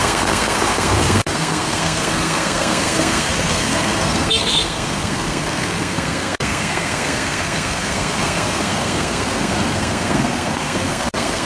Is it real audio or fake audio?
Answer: fake